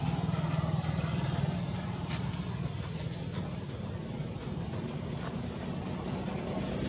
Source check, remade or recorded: recorded